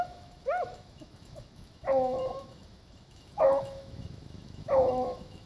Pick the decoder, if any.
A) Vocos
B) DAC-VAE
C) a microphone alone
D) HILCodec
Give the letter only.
B